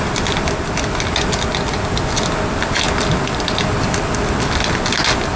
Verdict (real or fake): real